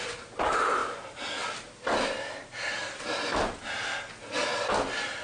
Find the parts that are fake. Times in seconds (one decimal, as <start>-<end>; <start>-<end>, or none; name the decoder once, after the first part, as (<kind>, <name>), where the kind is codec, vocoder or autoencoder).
none